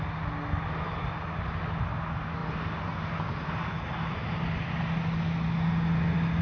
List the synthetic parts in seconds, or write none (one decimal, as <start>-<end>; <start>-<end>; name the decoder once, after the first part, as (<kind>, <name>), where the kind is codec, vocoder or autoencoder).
none